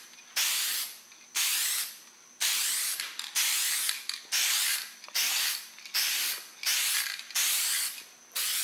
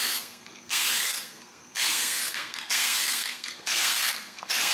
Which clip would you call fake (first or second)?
second